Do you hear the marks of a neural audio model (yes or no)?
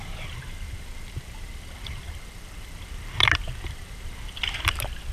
yes